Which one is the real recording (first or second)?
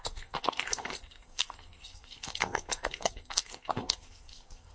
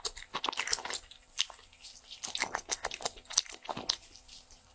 second